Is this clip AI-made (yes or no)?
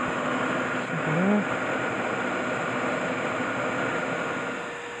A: no